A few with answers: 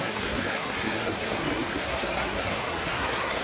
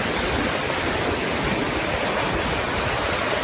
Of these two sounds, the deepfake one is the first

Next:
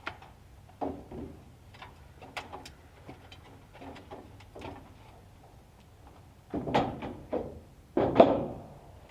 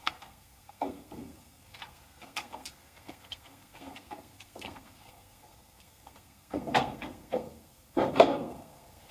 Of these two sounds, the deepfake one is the second